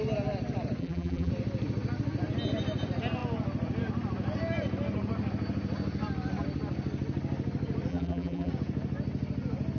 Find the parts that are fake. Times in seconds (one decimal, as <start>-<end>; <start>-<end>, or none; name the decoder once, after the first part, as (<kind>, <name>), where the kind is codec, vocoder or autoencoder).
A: 0.8-1.3 (vocoder, BigVGAN v2); 7.9-8.5